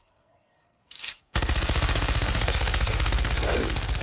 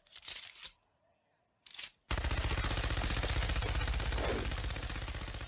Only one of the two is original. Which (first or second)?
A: second